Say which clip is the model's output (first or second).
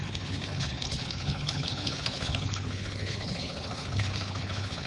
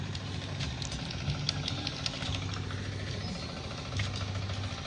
first